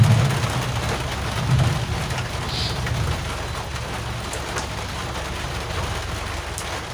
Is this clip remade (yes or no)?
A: no